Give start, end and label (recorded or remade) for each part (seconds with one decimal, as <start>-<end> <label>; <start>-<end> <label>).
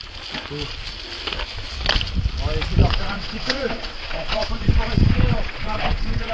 0.0-2.8 recorded; 2.8-6.3 remade